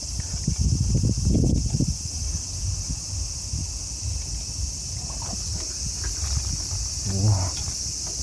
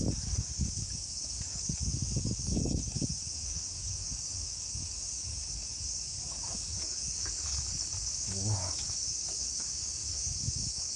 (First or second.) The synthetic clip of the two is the second